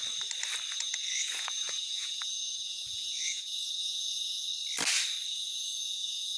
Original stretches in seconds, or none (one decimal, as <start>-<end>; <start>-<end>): 0.0-0.7; 4.5-5.3